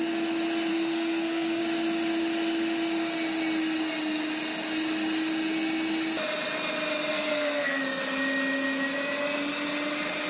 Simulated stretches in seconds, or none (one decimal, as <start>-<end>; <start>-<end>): 0.7-1.6; 7.1-7.8